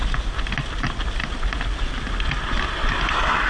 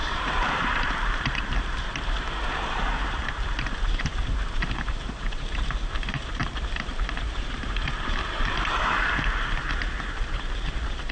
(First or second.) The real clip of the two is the first